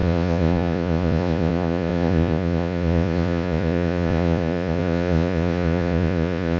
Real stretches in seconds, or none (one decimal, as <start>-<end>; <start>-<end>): none